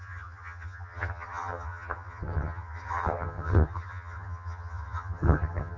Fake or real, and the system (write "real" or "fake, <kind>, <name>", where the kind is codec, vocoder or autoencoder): fake, vocoder, HiFi-GAN